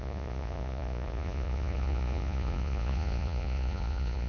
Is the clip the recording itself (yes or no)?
no